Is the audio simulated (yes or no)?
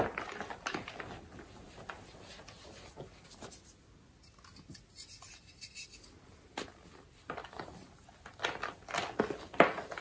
no